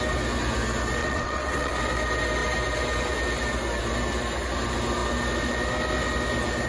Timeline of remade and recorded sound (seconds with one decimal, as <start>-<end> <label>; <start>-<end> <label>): 0.0-1.0 recorded; 1.0-1.7 remade; 1.7-6.7 recorded